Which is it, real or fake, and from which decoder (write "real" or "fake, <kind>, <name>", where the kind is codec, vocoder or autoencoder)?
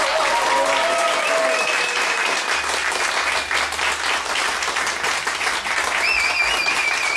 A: real